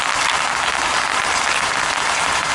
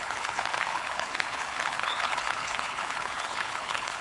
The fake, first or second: second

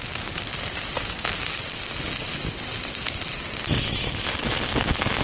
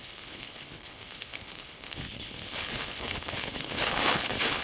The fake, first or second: second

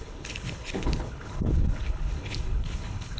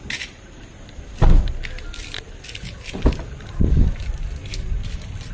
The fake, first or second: first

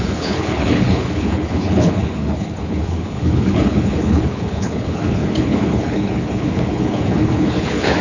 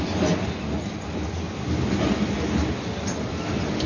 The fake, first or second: first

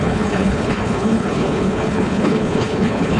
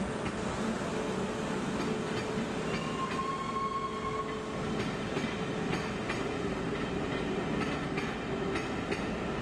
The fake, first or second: first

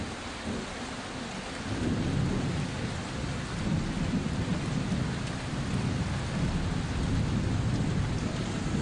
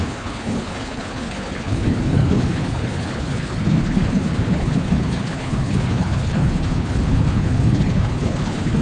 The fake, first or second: second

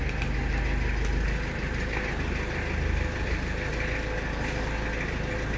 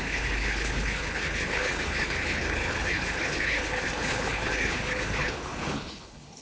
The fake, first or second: second